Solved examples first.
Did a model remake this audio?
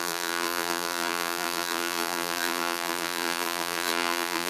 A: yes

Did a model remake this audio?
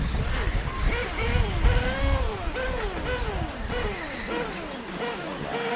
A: no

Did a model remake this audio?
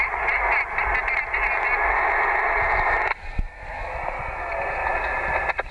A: no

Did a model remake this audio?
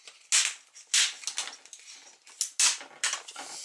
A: no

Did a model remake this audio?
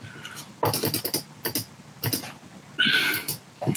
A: no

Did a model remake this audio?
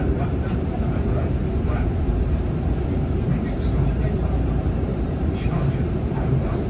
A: yes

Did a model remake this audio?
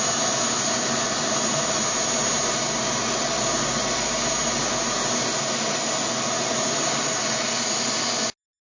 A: no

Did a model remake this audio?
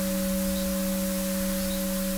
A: no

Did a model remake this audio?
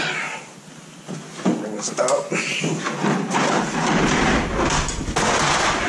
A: no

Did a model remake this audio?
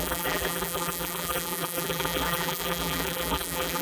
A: yes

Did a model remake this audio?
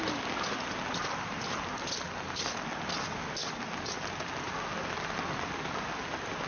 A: no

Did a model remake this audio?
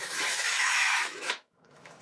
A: yes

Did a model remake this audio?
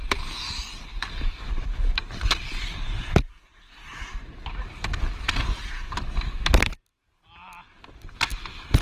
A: no